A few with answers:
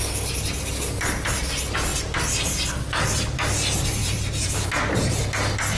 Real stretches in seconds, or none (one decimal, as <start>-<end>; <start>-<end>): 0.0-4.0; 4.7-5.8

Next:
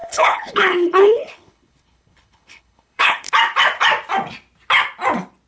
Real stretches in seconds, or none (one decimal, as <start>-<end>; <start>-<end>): 3.3-5.5

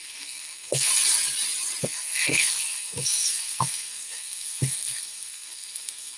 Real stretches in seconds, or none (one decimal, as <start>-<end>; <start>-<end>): 0.9-1.8

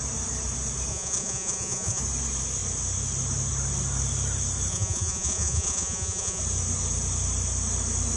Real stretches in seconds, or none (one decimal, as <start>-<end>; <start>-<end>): 0.0-0.9; 2.0-4.7; 6.4-8.2

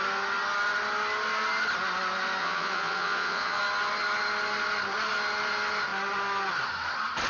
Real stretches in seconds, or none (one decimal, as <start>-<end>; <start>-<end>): 0.0-2.4; 3.6-7.3